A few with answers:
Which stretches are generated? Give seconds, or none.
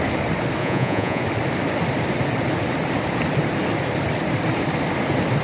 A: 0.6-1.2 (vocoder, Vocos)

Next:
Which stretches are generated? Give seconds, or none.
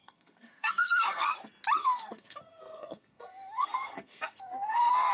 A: 0.0-1.3 (codec, SNAC); 1.8-5.1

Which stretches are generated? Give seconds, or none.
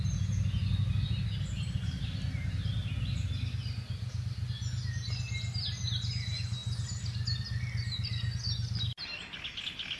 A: none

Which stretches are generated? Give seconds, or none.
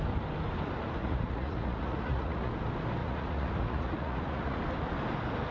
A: 1.0-2.5 (vocoder, Vocos); 3.0-4.6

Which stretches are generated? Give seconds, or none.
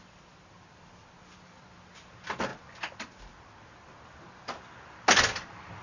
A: none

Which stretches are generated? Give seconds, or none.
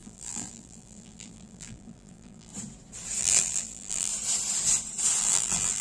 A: 0.0-2.5 (vocoder, BigVGAN v2); 3.2-4.1; 5.2-5.8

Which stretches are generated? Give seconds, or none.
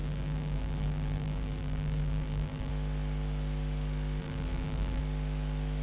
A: 0.0-2.7 (vocoder, BigVGAN v2); 4.2-5.0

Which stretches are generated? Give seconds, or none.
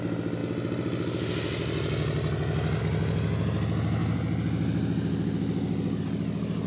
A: none